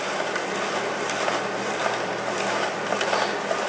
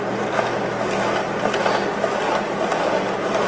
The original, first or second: second